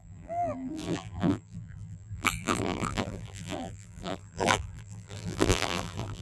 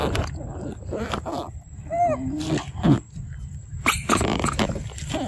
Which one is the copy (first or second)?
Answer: first